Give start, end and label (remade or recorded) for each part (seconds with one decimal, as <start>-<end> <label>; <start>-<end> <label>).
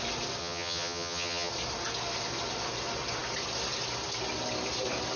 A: 0.0-0.4 recorded; 0.4-1.5 remade; 1.5-5.2 recorded